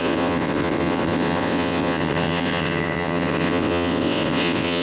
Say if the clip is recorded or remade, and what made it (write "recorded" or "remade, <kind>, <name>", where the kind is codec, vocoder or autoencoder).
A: remade, vocoder, WaveNeXt